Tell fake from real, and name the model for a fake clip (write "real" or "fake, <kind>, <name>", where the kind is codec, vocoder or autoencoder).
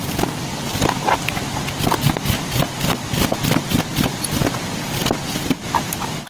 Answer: real